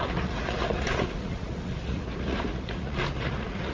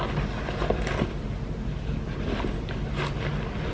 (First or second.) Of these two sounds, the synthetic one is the first